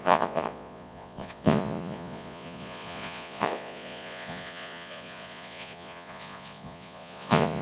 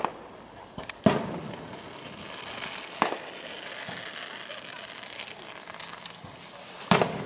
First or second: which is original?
second